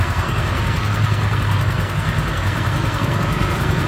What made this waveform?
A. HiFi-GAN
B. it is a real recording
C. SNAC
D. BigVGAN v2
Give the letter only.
C